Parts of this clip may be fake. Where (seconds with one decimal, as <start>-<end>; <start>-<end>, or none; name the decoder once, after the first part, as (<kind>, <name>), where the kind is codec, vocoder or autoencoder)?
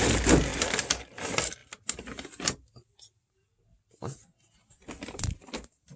none